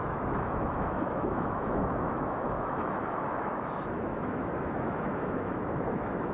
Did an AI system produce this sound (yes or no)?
yes